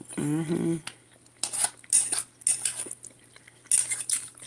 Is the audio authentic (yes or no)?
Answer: yes